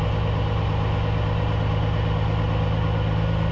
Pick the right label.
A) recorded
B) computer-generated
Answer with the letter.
A